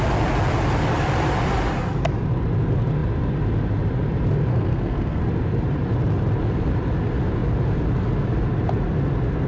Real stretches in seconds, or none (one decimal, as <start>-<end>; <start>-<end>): 0.0-4.5; 5.2-9.5